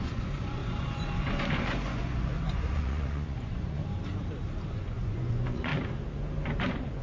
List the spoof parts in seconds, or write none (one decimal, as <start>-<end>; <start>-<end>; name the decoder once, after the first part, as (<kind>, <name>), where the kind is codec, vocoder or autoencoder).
0.0-3.8 (vocoder, Vocos); 4.7-5.7; 6.6-7.0